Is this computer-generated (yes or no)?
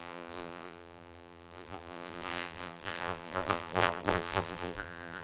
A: yes